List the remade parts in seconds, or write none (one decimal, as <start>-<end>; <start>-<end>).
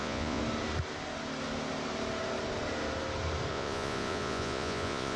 0.0-0.4; 3.5-5.2